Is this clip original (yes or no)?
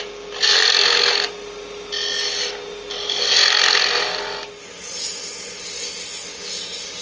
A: yes